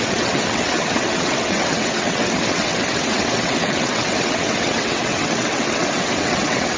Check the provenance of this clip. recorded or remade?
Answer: remade